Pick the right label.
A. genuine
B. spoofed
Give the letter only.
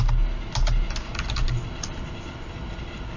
A